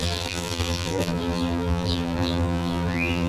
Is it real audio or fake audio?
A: fake